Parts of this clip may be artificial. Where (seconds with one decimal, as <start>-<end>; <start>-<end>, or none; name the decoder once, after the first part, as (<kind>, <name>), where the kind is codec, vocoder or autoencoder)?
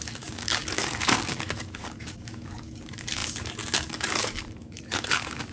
0.0-5.5 (codec, DAC)